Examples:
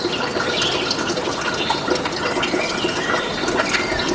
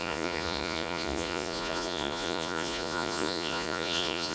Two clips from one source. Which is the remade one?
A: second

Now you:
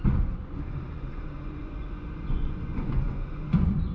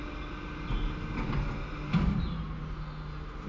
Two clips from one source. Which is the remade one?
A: first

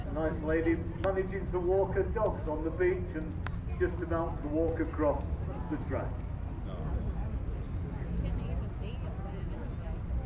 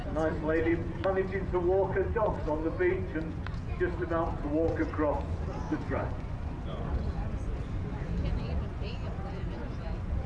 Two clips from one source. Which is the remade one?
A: second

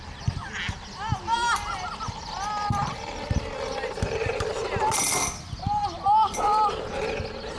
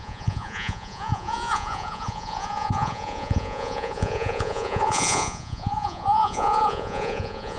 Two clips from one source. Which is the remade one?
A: second